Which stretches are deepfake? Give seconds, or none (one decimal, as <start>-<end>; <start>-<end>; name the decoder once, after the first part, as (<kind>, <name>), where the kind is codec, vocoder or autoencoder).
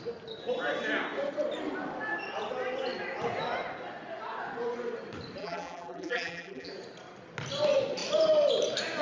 5.4-6.7 (vocoder, BigVGAN v2)